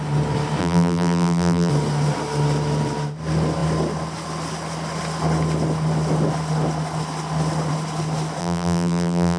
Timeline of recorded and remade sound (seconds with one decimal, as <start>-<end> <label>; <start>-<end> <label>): 0.0-0.6 recorded; 0.6-1.7 remade; 1.7-8.4 recorded; 8.4-9.4 remade